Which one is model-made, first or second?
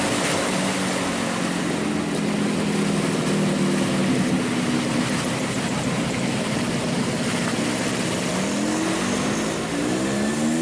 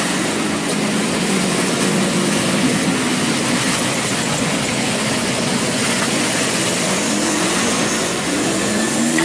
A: second